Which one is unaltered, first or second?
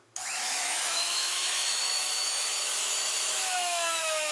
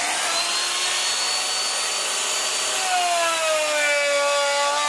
second